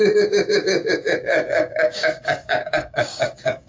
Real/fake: fake